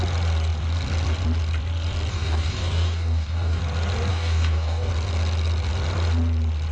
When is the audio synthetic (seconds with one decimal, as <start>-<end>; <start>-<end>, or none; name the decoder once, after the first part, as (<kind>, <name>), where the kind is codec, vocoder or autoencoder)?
2.1-3.6 (codec, DAC); 4.1-4.9